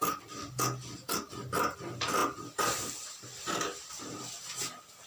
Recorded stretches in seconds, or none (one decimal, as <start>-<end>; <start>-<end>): 0.0-2.2; 4.4-5.1